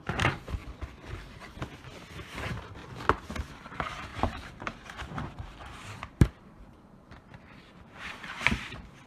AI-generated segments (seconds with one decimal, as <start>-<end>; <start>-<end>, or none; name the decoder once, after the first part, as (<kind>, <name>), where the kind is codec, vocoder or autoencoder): 0.0-0.6 (vocoder, BigVGAN v2); 2.3-2.8; 3.5-9.1